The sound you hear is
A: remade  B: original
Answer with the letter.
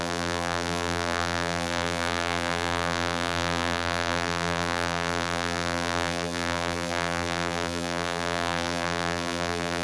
A